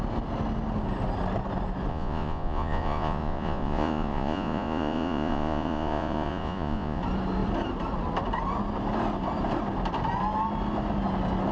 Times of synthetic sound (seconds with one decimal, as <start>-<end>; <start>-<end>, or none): 1.9-7.0